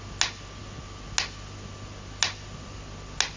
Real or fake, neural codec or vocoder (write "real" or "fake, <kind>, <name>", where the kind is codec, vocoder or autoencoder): real